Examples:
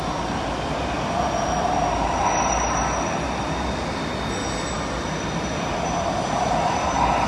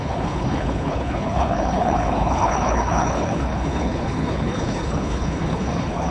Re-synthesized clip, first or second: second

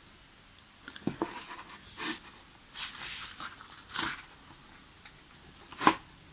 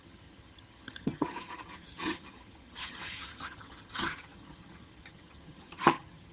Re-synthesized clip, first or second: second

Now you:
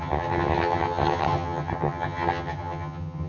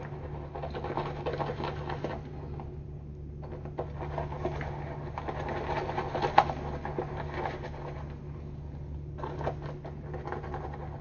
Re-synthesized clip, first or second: first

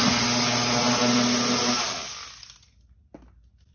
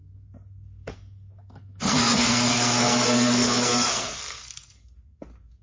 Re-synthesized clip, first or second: second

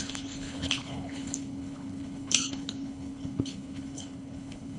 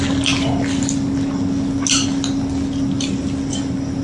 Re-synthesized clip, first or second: first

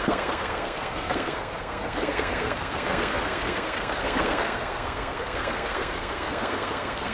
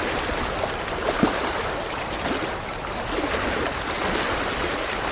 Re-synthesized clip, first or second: first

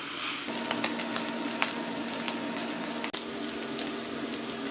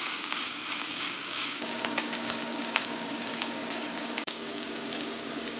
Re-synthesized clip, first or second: second